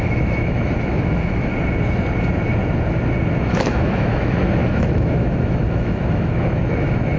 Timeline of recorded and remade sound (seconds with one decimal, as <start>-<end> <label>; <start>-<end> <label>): 0.0-1.5 remade; 1.5-3.4 recorded; 3.4-7.2 remade